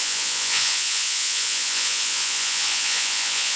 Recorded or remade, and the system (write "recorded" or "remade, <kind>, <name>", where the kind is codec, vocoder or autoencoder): remade, vocoder, Vocos